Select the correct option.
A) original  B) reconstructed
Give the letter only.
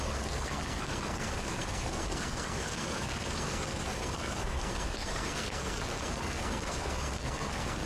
B